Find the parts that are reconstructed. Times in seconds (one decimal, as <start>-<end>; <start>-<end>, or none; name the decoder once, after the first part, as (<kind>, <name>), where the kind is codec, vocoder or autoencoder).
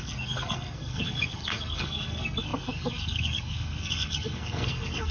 0.0-5.1 (codec, SNAC)